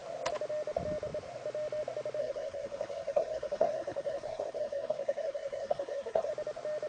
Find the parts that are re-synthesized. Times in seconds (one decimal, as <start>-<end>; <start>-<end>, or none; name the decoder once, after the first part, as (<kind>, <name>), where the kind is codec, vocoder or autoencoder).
2.2-6.3 (codec, SNAC)